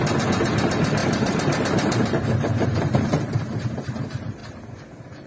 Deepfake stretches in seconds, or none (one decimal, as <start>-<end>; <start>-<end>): 1.0-3.4